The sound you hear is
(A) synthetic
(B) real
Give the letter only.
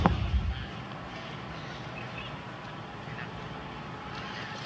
B